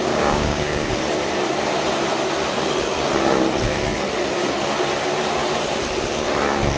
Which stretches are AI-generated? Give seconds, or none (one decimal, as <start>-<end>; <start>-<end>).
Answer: 0.0-0.9